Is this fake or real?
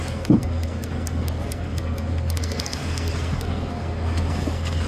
fake